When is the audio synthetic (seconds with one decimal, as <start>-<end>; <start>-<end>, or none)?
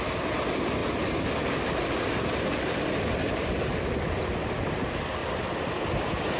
0.8-1.4; 2.3-4.6